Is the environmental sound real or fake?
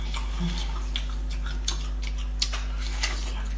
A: real